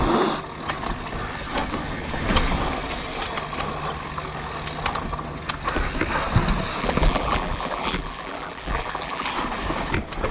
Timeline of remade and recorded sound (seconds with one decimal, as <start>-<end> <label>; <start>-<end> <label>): 0.0-6.8 recorded; 6.8-9.3 remade; 9.3-10.3 recorded